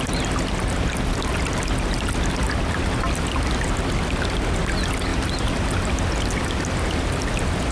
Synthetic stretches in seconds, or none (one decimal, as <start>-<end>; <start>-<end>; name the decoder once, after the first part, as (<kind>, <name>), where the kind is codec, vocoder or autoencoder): none